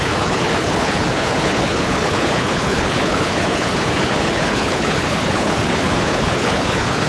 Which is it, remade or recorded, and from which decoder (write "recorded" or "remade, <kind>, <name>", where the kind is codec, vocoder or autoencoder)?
remade, codec, HILCodec